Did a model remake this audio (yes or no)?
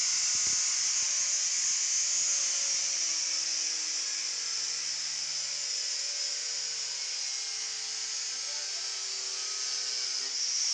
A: no